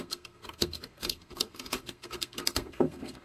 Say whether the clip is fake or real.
fake